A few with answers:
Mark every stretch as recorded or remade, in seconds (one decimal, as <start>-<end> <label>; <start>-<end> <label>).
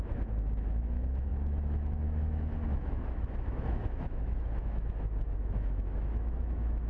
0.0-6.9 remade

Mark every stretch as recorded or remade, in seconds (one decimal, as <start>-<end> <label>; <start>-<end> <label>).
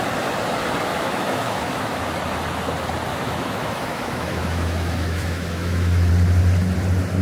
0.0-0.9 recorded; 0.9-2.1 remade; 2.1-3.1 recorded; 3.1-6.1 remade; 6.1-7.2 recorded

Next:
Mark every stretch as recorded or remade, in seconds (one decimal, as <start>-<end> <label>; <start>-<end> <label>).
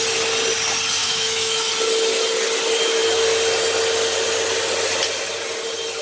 0.0-1.0 recorded; 1.0-1.7 remade; 1.7-6.0 recorded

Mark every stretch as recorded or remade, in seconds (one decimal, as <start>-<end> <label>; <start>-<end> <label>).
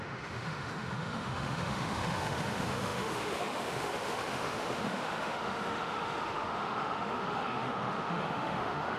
0.0-9.0 remade